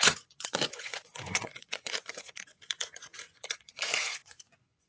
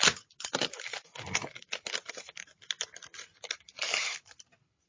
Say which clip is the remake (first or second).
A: first